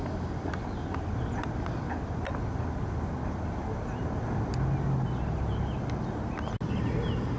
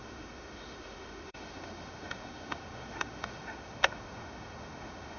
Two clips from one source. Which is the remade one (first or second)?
second